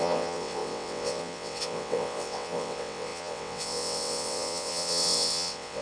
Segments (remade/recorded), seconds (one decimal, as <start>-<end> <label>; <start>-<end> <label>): 0.0-5.8 remade